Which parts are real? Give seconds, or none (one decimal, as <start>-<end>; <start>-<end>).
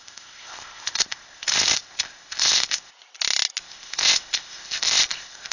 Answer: 2.9-3.6